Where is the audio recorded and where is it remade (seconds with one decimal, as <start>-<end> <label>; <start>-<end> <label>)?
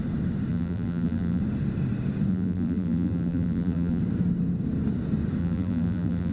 0.0-0.5 recorded; 0.5-1.4 remade; 1.4-2.3 recorded; 2.3-4.0 remade; 4.0-5.4 recorded; 5.4-6.3 remade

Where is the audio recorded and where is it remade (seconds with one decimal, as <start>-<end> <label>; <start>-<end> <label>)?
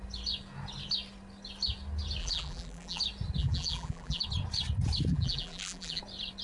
0.0-2.2 recorded; 2.2-3.0 remade; 3.0-3.4 recorded; 3.4-4.2 remade; 4.2-5.1 recorded; 5.1-6.0 remade; 6.0-6.4 recorded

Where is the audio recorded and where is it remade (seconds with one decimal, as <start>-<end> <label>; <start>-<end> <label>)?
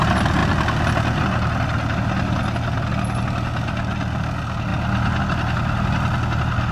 0.0-6.7 recorded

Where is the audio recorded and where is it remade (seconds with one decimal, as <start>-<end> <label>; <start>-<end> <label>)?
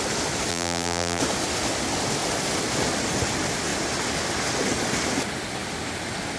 0.0-0.5 recorded; 0.5-1.2 remade; 1.2-6.4 recorded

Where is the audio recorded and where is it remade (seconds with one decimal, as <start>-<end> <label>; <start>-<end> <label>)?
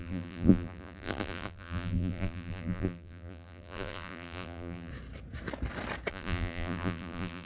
0.0-4.9 remade; 4.9-6.1 recorded; 6.1-7.5 remade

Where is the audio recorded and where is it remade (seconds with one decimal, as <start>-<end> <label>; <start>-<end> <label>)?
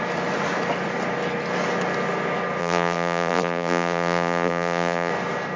0.0-2.6 recorded; 2.6-5.1 remade; 5.1-5.6 recorded